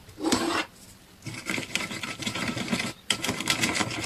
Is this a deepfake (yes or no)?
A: yes